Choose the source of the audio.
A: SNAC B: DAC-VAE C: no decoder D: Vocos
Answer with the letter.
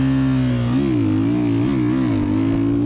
C